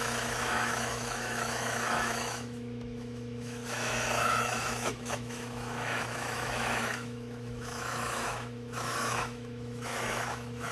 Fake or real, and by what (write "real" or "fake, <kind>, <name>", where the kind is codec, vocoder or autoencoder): fake, autoencoder, DAC-VAE